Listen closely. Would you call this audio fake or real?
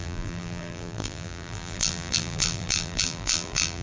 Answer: fake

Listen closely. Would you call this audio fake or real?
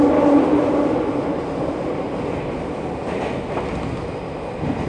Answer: real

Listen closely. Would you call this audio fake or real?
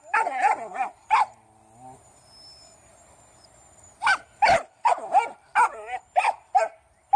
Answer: fake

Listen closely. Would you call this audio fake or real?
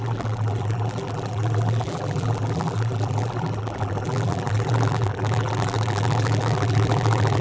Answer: fake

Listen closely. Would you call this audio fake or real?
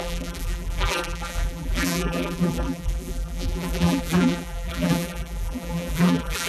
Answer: fake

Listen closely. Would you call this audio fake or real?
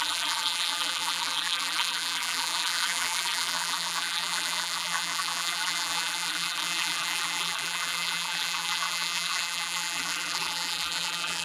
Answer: fake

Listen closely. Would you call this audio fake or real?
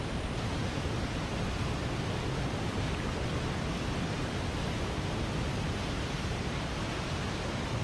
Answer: fake